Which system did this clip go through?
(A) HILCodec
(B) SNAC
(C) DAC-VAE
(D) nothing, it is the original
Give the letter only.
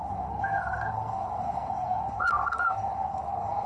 B